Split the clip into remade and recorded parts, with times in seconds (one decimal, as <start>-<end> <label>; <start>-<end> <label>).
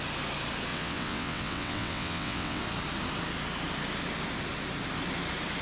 0.0-0.7 recorded; 0.7-2.6 remade; 2.6-5.6 recorded